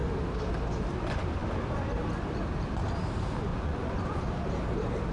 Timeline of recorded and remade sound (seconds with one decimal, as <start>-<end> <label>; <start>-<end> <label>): 0.0-3.5 recorded; 3.5-4.2 remade; 4.2-5.1 recorded